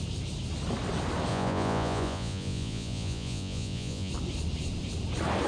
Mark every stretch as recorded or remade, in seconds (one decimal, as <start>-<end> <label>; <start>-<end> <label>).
0.0-1.3 recorded; 1.3-4.1 remade; 4.1-5.5 recorded